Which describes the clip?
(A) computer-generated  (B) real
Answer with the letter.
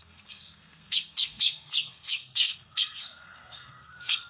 A